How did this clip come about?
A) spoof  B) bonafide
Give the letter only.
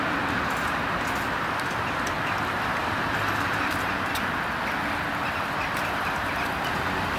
B